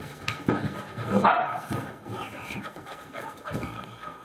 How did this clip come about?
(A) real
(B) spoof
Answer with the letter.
B